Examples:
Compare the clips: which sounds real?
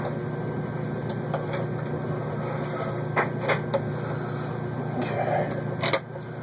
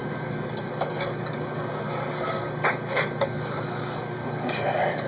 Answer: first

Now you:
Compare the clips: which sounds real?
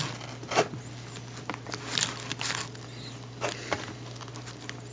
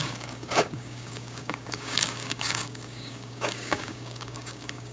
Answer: first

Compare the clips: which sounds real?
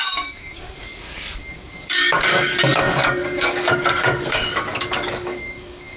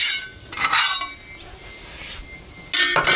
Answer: second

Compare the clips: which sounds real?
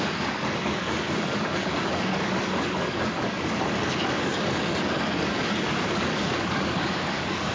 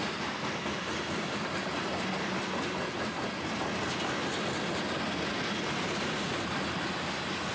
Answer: second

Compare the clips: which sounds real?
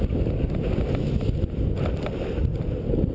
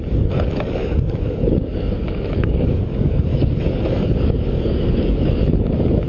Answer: first